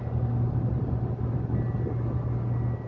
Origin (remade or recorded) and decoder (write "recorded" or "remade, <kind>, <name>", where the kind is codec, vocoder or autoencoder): recorded